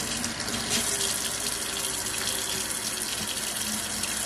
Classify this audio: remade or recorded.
recorded